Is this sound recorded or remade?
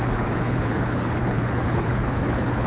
remade